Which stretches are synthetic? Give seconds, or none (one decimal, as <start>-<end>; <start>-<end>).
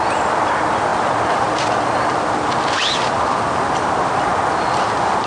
none